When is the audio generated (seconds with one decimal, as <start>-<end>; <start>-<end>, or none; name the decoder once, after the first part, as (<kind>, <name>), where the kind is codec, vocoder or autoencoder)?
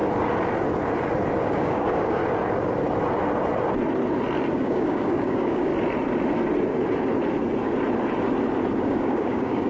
1.5-2.2 (codec, DAC); 4.5-5.7; 8.8-9.7